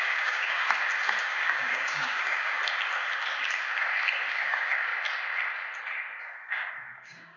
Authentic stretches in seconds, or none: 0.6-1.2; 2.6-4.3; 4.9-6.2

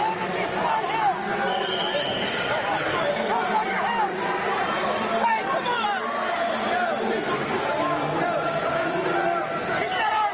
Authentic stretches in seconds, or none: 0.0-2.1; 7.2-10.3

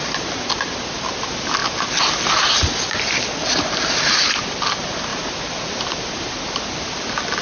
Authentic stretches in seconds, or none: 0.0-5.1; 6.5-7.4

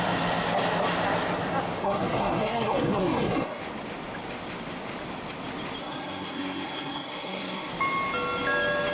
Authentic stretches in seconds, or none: 0.0-1.8; 3.6-5.8; 7.7-8.9

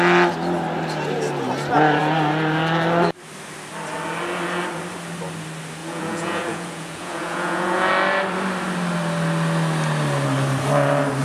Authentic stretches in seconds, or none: 0.0-5.8; 7.9-11.2

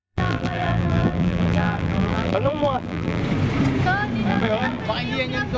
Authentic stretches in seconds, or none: 3.2-4.3; 4.8-5.6

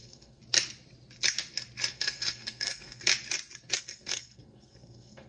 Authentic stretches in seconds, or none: 0.4-1.9; 3.1-3.8

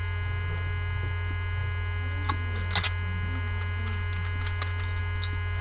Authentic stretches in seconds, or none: 0.0-5.6